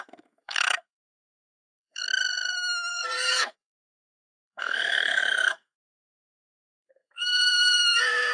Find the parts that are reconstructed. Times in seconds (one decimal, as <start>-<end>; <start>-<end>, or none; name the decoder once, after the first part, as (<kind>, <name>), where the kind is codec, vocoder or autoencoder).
0.0-2.0 (codec, SNAC); 2.9-8.3